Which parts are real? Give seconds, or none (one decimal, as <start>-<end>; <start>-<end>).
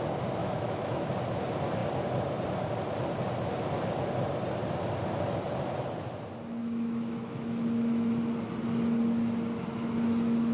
0.0-0.4; 1.1-6.6; 8.1-10.5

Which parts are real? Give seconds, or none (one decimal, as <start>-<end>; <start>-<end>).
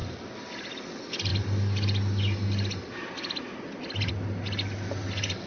0.0-5.5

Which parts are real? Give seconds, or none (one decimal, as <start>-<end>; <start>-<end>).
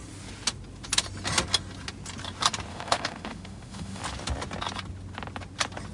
0.0-2.7; 4.0-5.9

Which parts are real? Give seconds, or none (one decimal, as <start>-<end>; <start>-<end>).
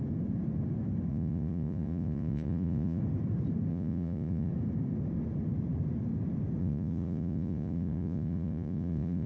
0.0-1.1; 3.0-3.7; 4.5-6.6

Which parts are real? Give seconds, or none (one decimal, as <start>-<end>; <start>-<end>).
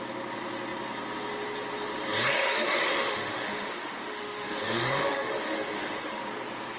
0.0-2.4; 6.2-6.8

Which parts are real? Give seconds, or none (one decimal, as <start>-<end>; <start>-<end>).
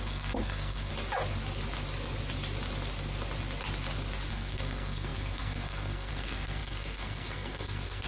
0.9-4.3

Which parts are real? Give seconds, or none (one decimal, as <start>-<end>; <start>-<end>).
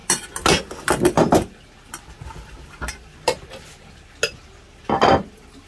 0.0-5.7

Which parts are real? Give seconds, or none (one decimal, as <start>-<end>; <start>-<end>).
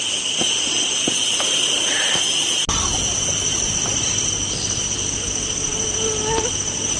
0.0-7.0